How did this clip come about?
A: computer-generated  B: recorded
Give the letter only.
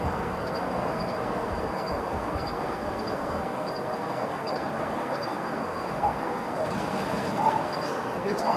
A